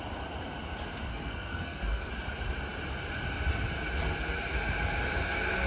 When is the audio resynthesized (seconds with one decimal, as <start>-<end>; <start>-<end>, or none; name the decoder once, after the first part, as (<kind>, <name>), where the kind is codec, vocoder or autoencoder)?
1.1-2.1 (codec, SNAC)